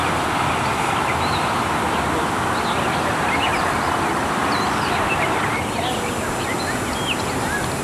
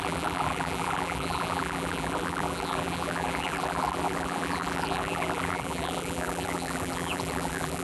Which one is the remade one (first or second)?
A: second